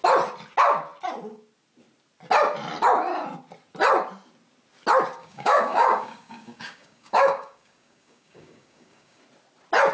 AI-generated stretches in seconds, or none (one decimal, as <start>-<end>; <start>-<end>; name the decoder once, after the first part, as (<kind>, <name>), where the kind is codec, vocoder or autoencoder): 5.2-9.2 (codec, DAC)